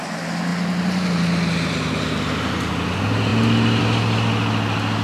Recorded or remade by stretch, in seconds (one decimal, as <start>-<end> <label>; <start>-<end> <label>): 0.0-5.0 recorded